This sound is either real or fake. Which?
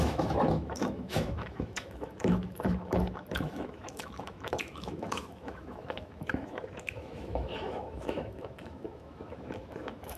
fake